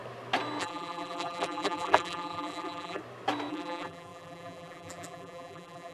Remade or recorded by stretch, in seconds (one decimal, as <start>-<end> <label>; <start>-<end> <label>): 0.0-0.6 recorded; 0.6-3.0 remade; 3.0-3.5 recorded; 3.5-5.9 remade